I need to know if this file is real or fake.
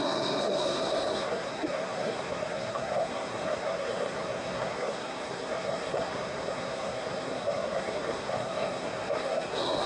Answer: fake